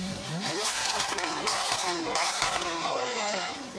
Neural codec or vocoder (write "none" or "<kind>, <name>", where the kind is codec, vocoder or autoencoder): codec, SNAC